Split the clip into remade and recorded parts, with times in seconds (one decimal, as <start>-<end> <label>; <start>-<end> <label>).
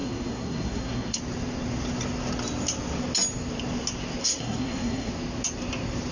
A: 0.0-1.2 remade; 1.2-4.2 recorded; 4.2-5.1 remade; 5.1-6.1 recorded